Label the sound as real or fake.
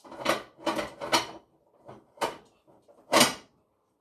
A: real